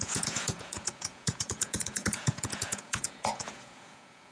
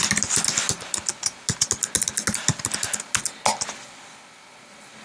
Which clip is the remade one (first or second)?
first